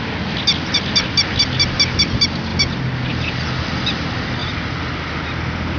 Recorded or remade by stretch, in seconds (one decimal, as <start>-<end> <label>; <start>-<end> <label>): 0.0-5.8 recorded